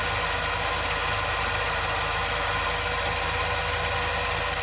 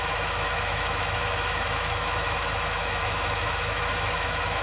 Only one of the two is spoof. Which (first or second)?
second